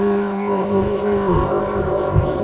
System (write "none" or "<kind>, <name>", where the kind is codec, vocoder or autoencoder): codec, ZipCodec